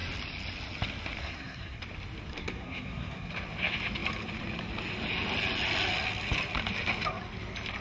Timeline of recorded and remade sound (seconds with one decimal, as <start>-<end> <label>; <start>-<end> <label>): 0.0-1.2 recorded; 1.2-1.8 remade; 1.8-2.3 recorded; 2.3-3.3 remade; 3.3-7.8 recorded